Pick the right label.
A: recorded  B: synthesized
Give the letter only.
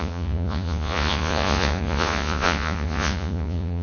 B